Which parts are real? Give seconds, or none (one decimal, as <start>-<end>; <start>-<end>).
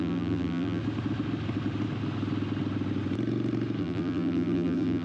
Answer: 0.8-3.8